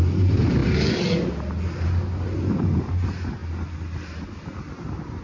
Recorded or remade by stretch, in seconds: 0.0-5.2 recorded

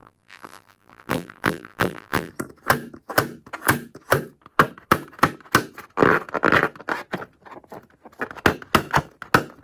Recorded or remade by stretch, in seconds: 0.0-2.3 remade; 2.3-9.6 recorded

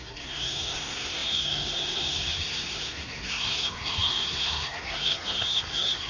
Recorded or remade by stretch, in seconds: 0.0-6.1 remade

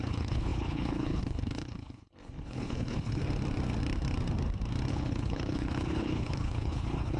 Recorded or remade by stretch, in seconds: 0.0-3.2 remade; 3.2-4.9 recorded; 4.9-7.2 remade

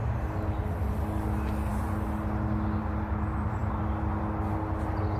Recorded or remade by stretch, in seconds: 0.0-5.2 recorded

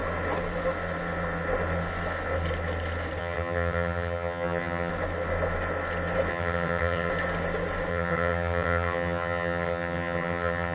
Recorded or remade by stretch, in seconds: 0.0-3.2 recorded; 3.2-4.9 remade; 4.9-6.3 recorded; 6.3-7.1 remade; 7.1-7.9 recorded; 7.9-10.7 remade